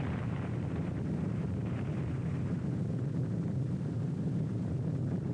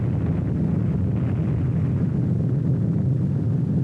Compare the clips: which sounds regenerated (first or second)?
first